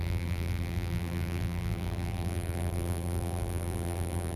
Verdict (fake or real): fake